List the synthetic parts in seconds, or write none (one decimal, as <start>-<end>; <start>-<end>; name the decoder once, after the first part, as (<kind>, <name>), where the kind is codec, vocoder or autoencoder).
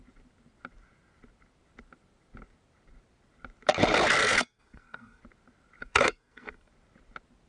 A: 4.2-5.2 (codec, SNAC); 5.8-6.7